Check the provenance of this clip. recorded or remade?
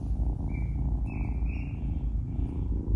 recorded